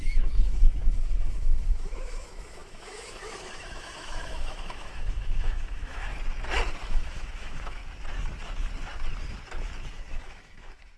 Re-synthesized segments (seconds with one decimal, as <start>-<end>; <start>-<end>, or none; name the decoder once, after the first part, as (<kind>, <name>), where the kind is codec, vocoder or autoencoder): 0.0-6.1 (autoencoder, DAC-VAE); 6.9-7.8; 10.1-11.0